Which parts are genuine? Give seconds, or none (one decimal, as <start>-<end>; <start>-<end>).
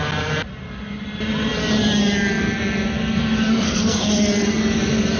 0.0-3.5; 4.1-5.2